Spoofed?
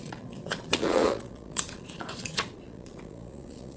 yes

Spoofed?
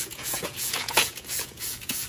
yes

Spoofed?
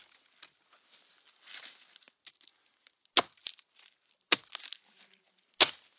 no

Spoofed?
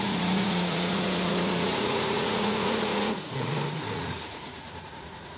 yes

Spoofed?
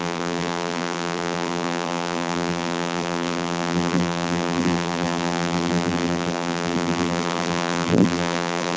yes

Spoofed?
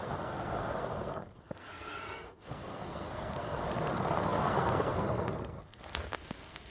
yes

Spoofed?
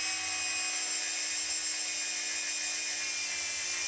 no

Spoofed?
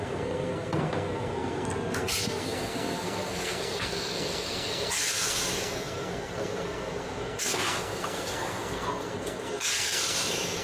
yes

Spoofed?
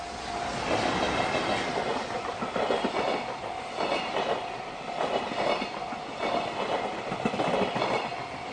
no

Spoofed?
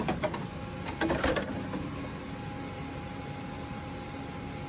no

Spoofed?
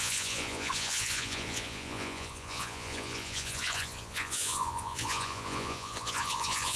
yes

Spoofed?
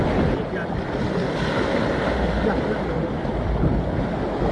no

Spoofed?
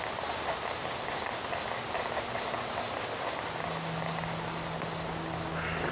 no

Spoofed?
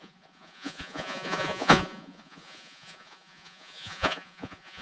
yes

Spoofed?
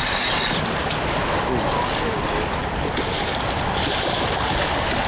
no